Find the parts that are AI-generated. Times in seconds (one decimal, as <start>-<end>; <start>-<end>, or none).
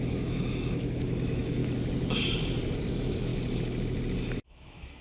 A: 0.0-1.6; 2.9-3.3; 4.5-5.0